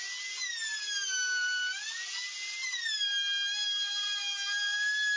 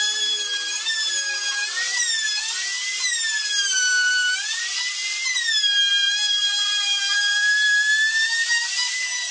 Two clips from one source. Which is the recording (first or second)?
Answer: first